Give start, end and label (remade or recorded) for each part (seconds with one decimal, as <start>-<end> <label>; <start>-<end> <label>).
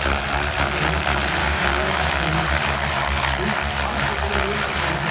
0.0-1.4 recorded; 1.4-2.1 remade; 2.1-5.1 recorded